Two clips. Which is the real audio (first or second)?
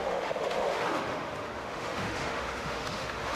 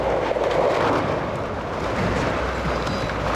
second